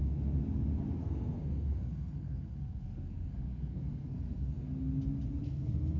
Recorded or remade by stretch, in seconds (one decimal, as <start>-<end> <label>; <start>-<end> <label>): 0.0-1.0 recorded; 1.0-4.6 remade; 4.6-5.4 recorded; 5.4-6.0 remade